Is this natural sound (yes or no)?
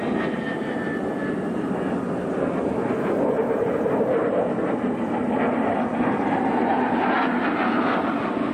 yes